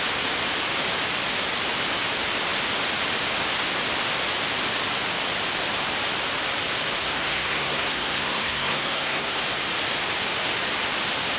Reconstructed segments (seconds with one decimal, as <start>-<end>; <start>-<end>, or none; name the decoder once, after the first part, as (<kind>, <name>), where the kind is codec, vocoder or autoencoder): 7.0-9.4 (codec, SNAC)